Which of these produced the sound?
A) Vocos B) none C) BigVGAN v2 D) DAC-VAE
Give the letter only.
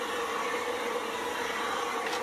B